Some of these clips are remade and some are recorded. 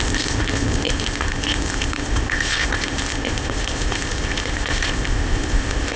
remade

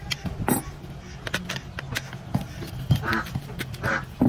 recorded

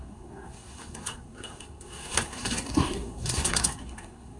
remade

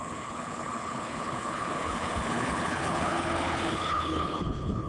remade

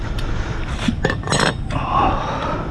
recorded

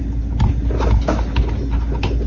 recorded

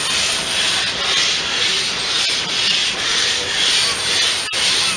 recorded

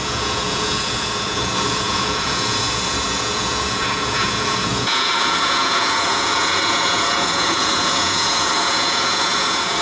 remade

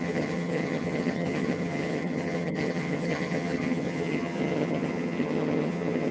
remade